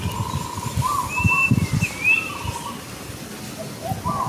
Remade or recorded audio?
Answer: recorded